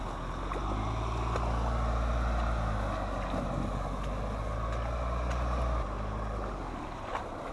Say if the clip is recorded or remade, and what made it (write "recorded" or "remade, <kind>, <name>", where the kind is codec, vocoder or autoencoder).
recorded